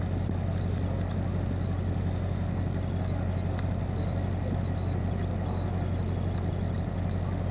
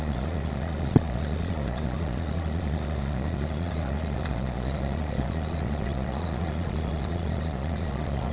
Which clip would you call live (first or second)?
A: first